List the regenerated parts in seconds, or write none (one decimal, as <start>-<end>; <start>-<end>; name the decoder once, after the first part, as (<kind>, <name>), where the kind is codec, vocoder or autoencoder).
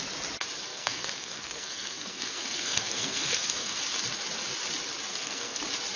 0.7-3.8 (codec, SNAC); 5.1-5.6